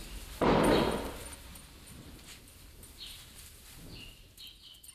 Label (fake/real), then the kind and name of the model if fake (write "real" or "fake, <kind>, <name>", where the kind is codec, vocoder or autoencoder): real